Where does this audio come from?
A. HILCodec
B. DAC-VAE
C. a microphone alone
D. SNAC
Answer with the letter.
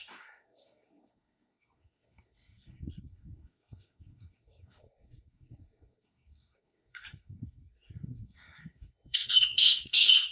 D